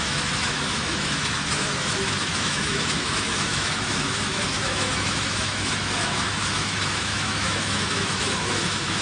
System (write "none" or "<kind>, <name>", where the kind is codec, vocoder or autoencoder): autoencoder, DAC-VAE